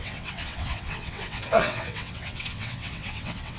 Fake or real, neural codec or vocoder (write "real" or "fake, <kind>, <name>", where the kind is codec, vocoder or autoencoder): fake, vocoder, WaveNeXt